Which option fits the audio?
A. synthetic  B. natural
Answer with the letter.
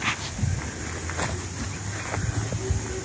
B